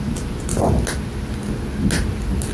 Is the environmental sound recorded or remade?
recorded